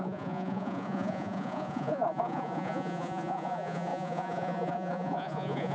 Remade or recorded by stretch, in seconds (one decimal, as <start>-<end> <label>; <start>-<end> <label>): 0.0-5.7 remade

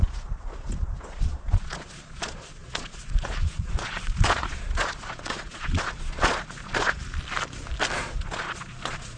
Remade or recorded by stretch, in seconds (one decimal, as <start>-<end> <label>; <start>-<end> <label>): 0.0-7.0 remade; 7.0-8.0 recorded; 8.0-9.2 remade

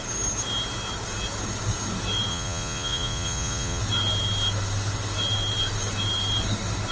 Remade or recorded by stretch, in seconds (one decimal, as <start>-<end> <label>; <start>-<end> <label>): 0.0-2.3 recorded; 2.3-3.8 remade; 3.8-6.9 recorded